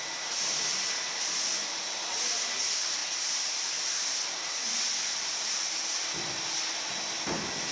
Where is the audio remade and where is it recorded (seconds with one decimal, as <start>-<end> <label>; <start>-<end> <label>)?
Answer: 0.0-7.7 recorded